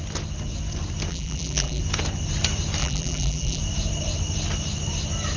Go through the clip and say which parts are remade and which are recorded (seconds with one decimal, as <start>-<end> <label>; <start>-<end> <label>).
0.0-1.1 recorded; 1.1-1.8 remade; 1.8-2.8 recorded; 2.8-3.6 remade; 3.6-5.4 recorded